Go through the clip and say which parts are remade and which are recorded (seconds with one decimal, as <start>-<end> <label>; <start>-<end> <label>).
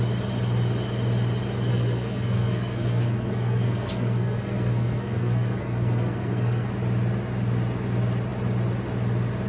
0.0-1.7 recorded; 1.7-6.7 remade; 6.7-9.5 recorded